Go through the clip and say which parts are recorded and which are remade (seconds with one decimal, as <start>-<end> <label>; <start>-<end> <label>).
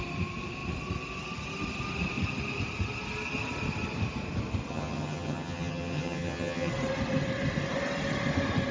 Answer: 0.0-4.7 recorded; 4.7-6.7 remade; 6.7-8.7 recorded